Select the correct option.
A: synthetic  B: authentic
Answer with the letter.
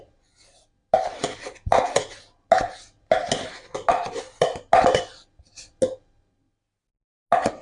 B